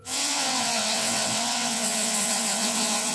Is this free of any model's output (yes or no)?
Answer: no